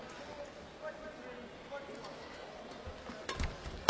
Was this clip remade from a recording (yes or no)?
no